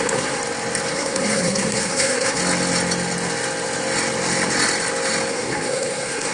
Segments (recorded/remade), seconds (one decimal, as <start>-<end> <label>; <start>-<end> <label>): 0.0-0.4 remade; 0.4-0.9 recorded; 0.9-2.4 remade; 2.4-5.3 recorded; 5.3-6.3 remade